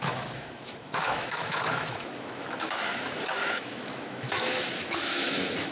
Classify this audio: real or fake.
fake